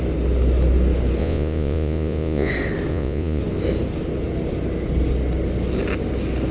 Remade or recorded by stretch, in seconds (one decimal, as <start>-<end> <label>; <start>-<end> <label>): 0.0-1.2 recorded; 1.2-2.5 remade; 2.5-2.9 recorded; 2.9-3.4 remade; 3.4-6.5 recorded